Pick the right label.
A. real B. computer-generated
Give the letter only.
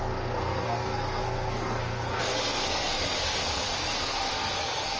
B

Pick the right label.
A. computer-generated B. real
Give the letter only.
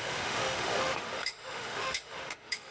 A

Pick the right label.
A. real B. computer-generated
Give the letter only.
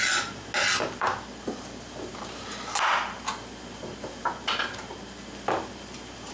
A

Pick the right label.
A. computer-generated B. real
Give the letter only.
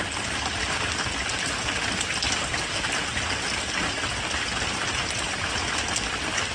B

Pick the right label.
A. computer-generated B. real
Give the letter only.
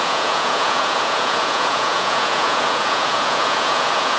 A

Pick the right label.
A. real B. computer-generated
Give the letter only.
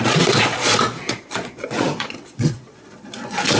B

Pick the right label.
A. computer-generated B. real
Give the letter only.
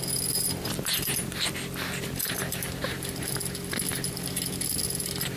B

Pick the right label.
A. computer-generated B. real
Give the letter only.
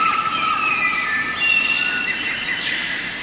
B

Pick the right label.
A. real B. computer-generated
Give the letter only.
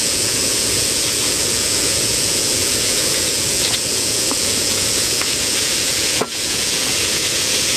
B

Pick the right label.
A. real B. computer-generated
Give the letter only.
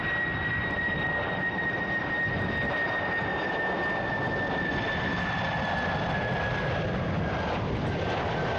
A